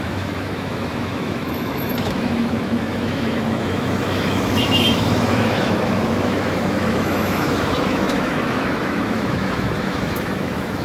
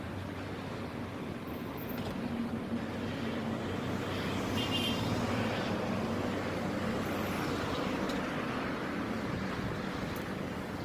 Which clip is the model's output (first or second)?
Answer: first